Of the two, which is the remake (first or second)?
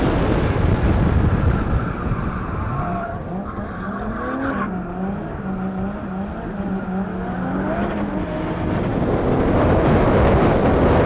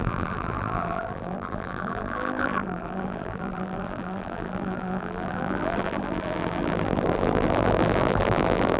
second